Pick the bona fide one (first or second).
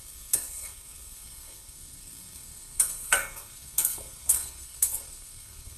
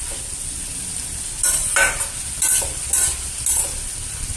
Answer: second